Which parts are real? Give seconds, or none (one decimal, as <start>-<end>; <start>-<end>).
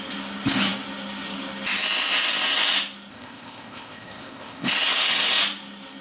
0.0-3.1; 4.7-6.0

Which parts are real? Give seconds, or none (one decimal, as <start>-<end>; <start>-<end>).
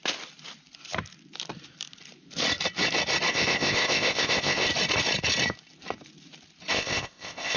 0.0-3.3; 4.7-6.7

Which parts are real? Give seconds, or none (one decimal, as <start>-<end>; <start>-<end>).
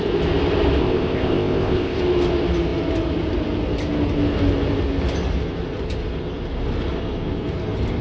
0.0-0.8; 2.0-8.0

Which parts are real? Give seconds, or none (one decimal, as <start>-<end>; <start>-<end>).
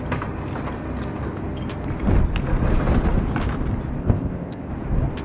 0.0-4.0; 4.7-5.2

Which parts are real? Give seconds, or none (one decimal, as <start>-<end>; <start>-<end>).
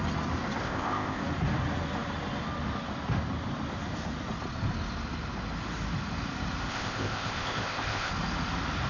0.0-0.6; 1.2-6.7; 8.1-8.9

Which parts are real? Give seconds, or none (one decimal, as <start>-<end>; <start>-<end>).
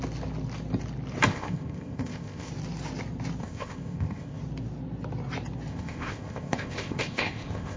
0.0-1.3; 2.5-3.4; 4.4-5.7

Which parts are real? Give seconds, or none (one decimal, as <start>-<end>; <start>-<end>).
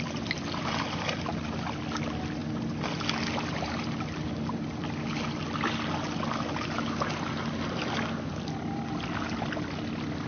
0.0-10.3